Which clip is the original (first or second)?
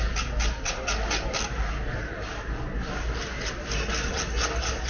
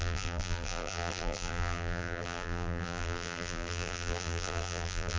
first